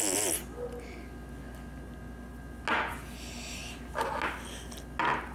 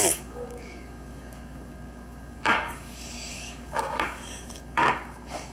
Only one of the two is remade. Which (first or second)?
second